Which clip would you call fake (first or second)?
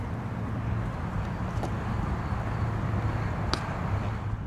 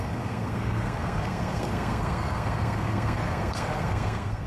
second